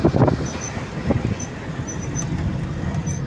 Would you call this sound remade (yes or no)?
no